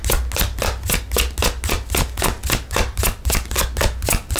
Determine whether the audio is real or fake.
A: real